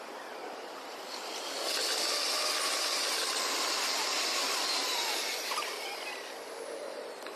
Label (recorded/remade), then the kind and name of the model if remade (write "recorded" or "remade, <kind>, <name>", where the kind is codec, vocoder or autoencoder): recorded